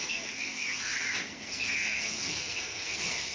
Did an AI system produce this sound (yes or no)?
yes